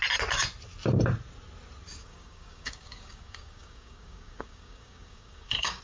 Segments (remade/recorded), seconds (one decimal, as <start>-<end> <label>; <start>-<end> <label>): 0.0-1.9 recorded; 1.9-5.8 remade